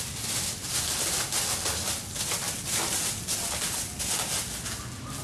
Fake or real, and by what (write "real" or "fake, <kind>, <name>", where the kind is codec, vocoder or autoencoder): real